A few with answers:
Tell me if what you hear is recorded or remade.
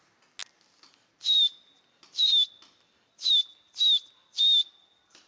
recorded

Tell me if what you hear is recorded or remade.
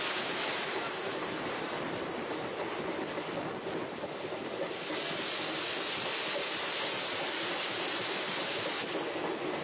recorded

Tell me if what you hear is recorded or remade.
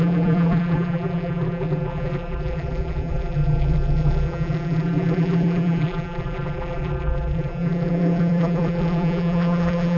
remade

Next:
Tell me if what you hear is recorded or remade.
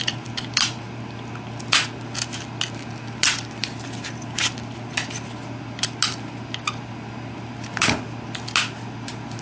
recorded